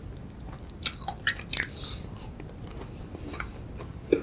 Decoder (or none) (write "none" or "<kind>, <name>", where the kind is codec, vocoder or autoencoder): none